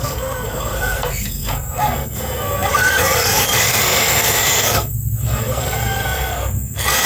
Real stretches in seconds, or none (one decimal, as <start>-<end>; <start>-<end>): none